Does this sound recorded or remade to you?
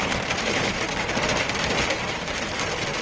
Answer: remade